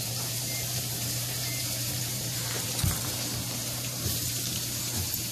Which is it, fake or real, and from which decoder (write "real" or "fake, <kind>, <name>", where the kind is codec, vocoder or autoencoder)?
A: fake, vocoder, BigVGAN v2